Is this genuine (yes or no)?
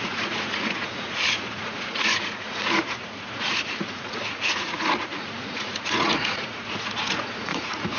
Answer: no